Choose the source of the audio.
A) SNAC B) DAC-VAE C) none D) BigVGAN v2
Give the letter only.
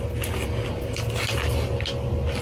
C